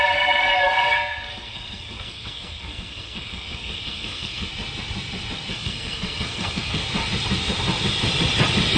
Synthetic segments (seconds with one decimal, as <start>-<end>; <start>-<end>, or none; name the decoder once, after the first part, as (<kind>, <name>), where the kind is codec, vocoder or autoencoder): 0.0-4.5 (codec, SNAC); 5.5-6.8